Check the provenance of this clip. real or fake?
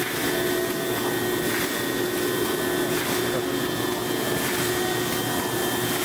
real